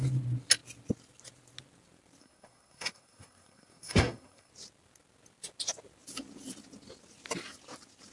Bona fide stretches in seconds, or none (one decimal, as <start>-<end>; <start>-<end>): 0.0-2.2; 4.5-8.1